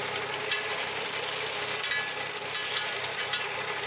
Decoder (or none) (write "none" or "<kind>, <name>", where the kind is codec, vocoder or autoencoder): none